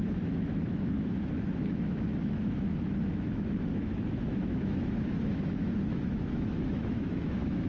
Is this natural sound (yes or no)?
no